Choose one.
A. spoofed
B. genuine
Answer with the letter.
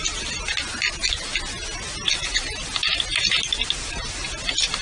B